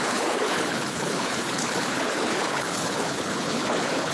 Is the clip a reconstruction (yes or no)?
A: yes